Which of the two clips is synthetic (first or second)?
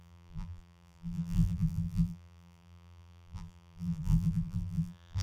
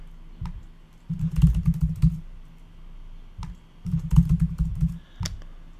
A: first